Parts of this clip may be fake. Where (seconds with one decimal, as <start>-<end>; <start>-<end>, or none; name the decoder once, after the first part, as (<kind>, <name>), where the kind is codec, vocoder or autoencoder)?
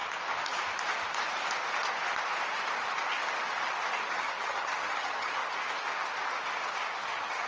4.1-5.4 (vocoder, HiFi-GAN); 7.1-7.5